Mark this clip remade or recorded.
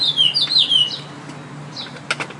recorded